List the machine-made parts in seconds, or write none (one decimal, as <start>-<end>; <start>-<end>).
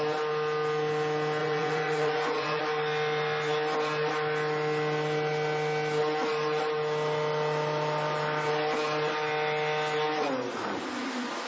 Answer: 1.4-2.6